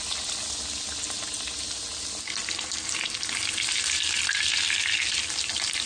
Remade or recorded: recorded